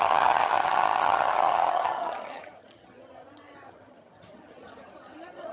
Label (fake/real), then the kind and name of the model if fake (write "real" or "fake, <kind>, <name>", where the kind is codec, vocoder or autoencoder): fake, vocoder, HiFi-GAN